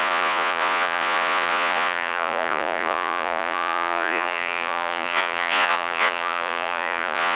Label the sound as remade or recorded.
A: remade